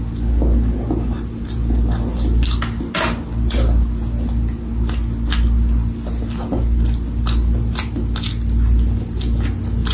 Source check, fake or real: real